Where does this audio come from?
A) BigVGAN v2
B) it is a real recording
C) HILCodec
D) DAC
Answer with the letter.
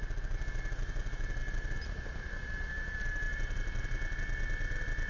B